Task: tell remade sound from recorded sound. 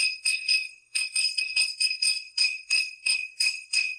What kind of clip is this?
remade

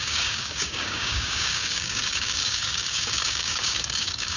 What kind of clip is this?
remade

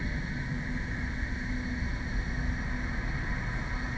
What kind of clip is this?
recorded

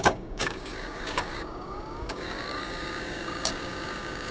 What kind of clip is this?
remade